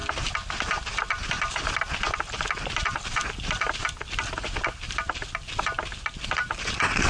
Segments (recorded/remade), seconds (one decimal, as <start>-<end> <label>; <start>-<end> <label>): 0.0-7.1 recorded